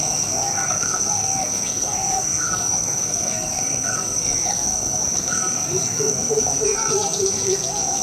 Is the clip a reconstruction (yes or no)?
yes